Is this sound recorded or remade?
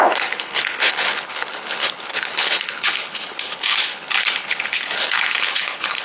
remade